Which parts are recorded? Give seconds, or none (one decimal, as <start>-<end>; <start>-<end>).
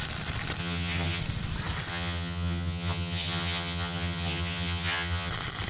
0.0-0.6; 1.2-1.9; 5.3-5.7